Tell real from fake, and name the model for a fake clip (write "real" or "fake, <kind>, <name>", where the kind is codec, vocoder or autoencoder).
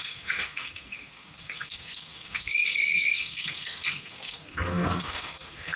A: fake, codec, SNAC